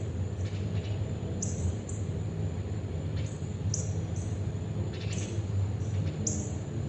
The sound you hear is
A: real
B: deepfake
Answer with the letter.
A